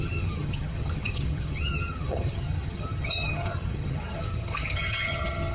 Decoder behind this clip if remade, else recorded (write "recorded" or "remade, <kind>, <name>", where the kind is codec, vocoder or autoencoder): remade, vocoder, HiFi-GAN